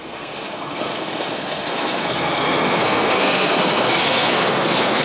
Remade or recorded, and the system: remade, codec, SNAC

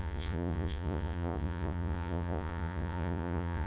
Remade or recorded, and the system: remade, vocoder, Vocos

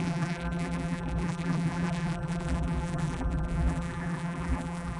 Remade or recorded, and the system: remade, vocoder, BigVGAN v2